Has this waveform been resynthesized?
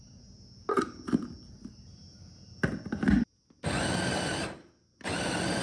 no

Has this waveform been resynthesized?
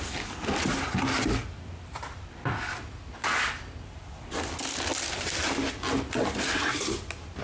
no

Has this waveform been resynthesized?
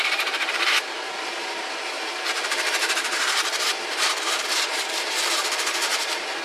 yes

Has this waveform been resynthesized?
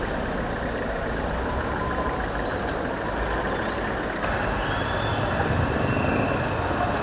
no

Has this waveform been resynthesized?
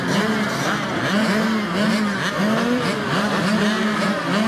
no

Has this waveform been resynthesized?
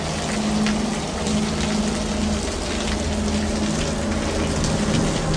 no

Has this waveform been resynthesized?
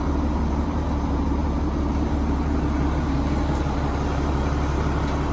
yes